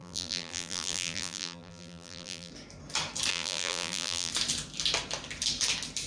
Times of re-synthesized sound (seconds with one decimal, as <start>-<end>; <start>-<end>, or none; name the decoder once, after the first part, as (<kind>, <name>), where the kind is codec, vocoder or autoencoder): 0.0-2.5 (vocoder, BigVGAN v2); 3.3-4.3